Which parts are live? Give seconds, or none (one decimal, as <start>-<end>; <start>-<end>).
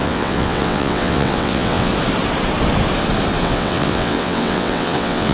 1.9-3.4